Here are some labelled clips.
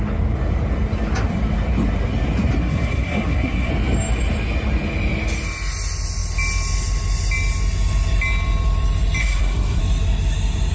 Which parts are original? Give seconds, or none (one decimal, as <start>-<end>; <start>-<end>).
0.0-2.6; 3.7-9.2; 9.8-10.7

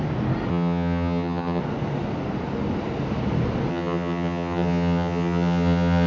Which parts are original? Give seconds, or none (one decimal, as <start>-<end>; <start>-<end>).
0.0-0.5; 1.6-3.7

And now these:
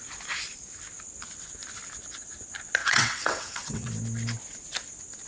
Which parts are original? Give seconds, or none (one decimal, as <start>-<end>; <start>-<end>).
0.0-2.8; 3.9-5.3

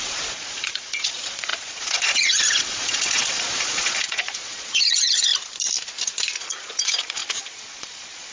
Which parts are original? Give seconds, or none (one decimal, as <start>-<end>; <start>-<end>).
5.3-6.4

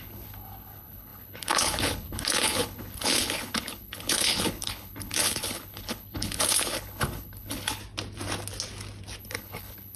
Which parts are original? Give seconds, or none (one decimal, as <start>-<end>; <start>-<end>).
7.8-9.2

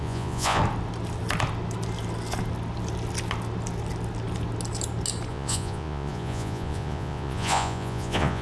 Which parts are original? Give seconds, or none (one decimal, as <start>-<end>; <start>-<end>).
0.6-5.3

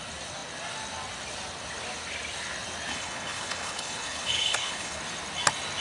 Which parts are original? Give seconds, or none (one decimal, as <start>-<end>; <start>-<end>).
0.0-2.9; 5.0-5.8